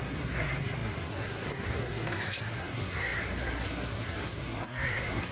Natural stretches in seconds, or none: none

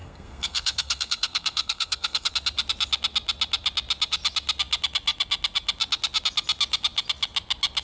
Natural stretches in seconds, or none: 2.3-7.8

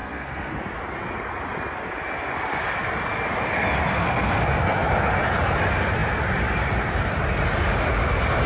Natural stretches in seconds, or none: 0.5-3.9; 4.4-8.5